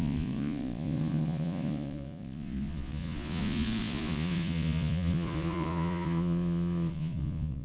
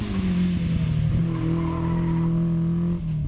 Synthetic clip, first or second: first